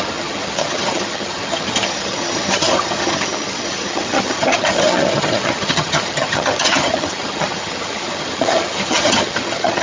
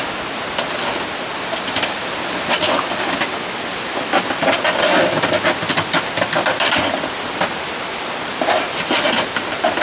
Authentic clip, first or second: second